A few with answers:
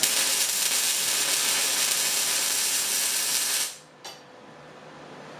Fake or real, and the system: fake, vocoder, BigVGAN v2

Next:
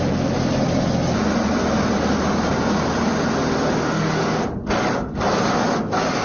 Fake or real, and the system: real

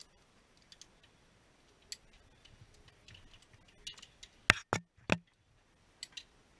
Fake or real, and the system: real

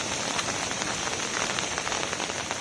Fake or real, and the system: fake, vocoder, BigVGAN v2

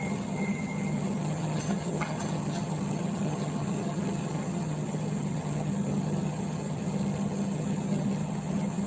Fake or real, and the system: fake, vocoder, HiFi-GAN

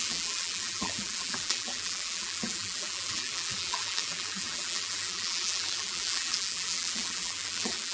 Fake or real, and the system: fake, vocoder, BigVGAN v2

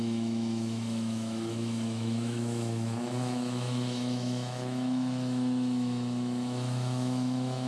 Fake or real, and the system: fake, autoencoder, DAC-VAE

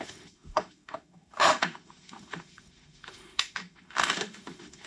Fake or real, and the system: fake, autoencoder, DAC-VAE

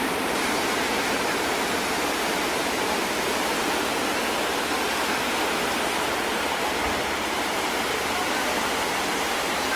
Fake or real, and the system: fake, vocoder, BigVGAN v2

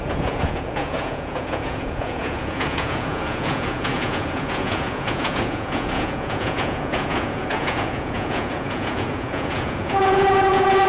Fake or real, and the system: fake, vocoder, Vocos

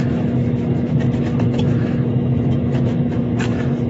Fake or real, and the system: fake, autoencoder, DAC-VAE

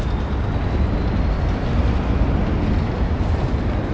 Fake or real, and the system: real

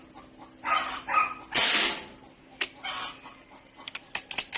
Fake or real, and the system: real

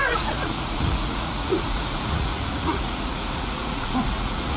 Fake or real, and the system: fake, vocoder, Vocos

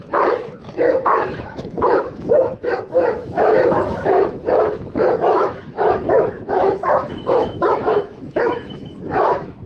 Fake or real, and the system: fake, autoencoder, DAC-VAE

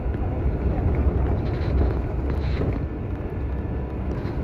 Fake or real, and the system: real